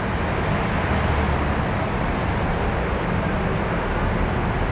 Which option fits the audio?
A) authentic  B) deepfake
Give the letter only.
A